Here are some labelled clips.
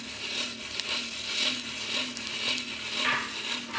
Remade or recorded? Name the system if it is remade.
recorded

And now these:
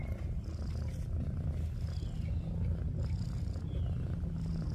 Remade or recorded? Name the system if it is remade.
recorded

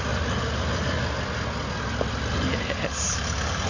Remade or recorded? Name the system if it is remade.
recorded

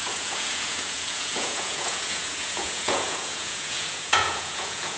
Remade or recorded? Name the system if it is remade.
remade, vocoder, Vocos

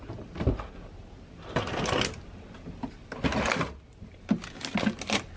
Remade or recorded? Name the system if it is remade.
recorded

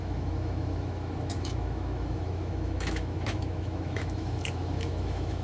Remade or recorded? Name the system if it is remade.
remade, autoencoder, DAC-VAE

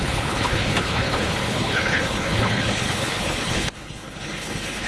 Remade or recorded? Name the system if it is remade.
remade, codec, HILCodec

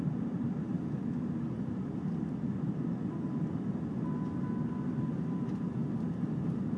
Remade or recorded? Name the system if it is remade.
recorded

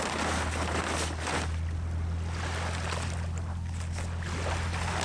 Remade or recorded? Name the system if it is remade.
recorded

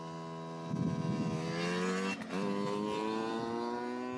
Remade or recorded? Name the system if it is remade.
recorded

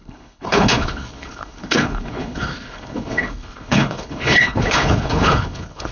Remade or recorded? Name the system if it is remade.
remade, codec, HILCodec